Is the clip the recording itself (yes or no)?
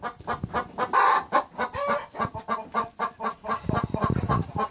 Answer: yes